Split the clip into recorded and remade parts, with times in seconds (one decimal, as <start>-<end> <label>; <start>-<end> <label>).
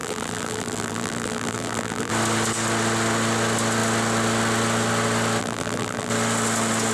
0.0-2.1 remade; 2.1-5.4 recorded; 5.4-6.1 remade; 6.1-6.9 recorded